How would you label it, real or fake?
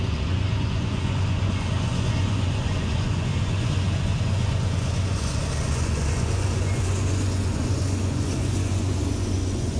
fake